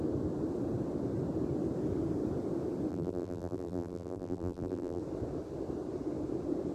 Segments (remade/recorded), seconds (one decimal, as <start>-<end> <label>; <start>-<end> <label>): 0.0-2.9 recorded; 2.9-5.0 remade; 5.0-6.7 recorded